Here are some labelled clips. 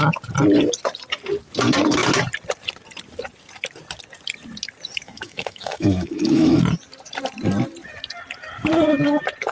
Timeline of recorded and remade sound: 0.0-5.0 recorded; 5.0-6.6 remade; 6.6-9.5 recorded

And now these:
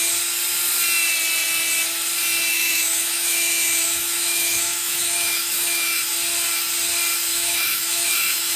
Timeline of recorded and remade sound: 0.0-2.5 recorded; 2.5-6.1 remade; 6.1-7.3 recorded; 7.3-8.6 remade

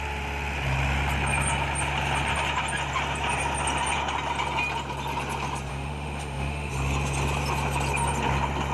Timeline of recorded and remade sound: 0.0-5.7 recorded; 5.7-6.7 remade; 6.7-8.7 recorded

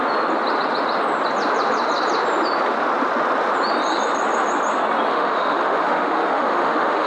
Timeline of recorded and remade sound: 0.0-5.1 recorded; 5.1-7.1 remade

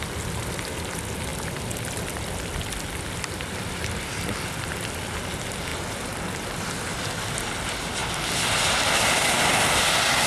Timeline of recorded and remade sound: 0.0-10.3 recorded

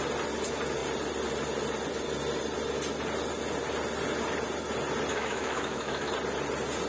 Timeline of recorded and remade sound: 0.0-5.1 recorded; 5.1-6.1 remade; 6.1-6.9 recorded

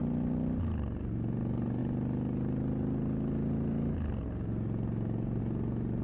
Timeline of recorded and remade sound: 0.0-6.0 recorded

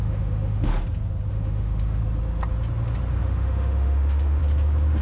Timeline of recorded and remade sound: 0.0-0.7 remade; 0.7-1.3 recorded; 1.3-2.0 remade; 2.0-3.2 recorded; 3.2-4.4 remade; 4.4-5.0 recorded